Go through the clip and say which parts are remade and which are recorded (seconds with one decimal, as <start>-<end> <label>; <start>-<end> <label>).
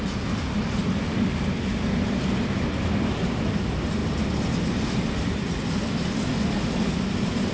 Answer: 0.0-7.5 recorded